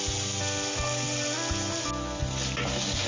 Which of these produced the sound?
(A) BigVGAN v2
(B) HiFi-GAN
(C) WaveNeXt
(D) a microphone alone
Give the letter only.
D